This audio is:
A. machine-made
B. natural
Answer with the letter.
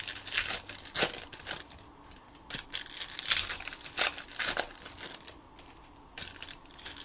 B